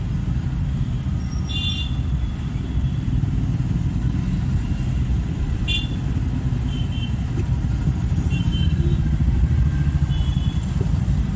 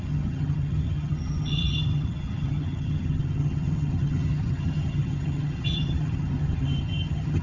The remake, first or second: second